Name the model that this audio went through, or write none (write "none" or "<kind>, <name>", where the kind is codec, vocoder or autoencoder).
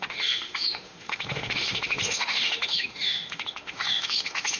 autoencoder, DAC-VAE